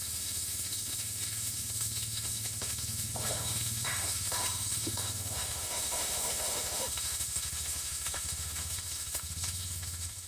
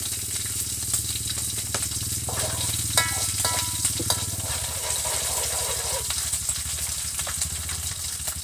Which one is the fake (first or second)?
first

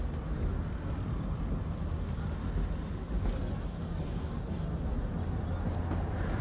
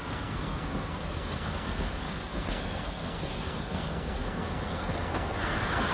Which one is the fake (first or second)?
second